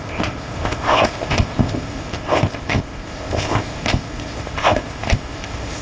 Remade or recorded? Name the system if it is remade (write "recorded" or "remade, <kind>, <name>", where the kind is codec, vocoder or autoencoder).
remade, codec, ZipCodec